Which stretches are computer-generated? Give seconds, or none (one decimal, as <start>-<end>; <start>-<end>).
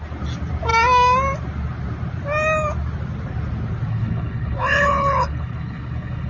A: 3.9-6.3